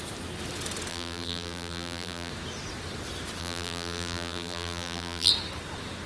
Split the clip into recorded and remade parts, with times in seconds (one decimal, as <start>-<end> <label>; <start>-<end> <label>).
0.0-0.9 recorded; 0.9-2.3 remade; 2.3-3.4 recorded; 3.4-5.3 remade; 5.3-6.1 recorded